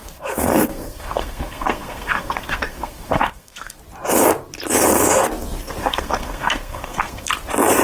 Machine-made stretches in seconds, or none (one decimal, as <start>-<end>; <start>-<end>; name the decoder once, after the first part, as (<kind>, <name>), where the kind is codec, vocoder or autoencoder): 0.0-3.8 (codec, SNAC); 5.8-7.3